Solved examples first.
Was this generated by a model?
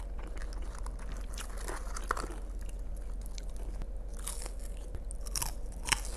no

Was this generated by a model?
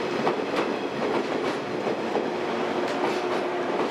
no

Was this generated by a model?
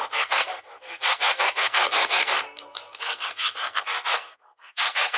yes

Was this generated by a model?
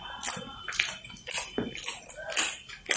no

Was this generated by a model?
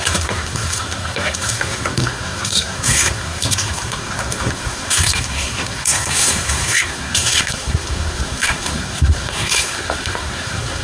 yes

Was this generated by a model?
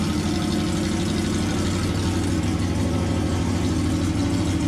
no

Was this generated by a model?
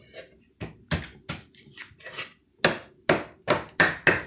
no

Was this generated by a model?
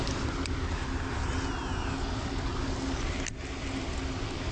no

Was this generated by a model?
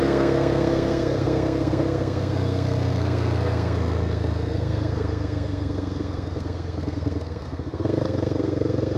yes